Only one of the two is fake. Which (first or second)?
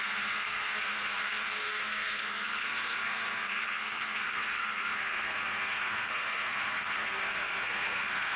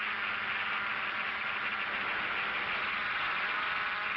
first